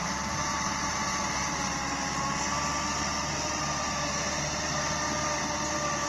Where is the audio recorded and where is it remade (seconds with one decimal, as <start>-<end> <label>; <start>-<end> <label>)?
0.0-1.0 remade; 1.0-6.1 recorded